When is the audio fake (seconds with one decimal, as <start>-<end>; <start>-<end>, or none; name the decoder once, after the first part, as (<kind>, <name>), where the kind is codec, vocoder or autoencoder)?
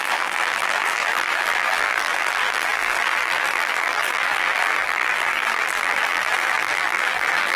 0.0-7.6 (vocoder, BigVGAN v2)